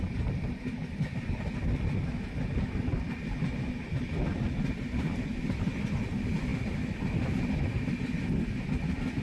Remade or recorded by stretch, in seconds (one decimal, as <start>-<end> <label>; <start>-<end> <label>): 0.0-9.2 recorded